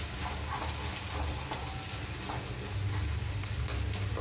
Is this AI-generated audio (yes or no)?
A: no